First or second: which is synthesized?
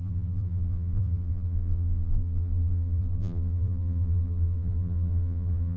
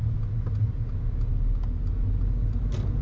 first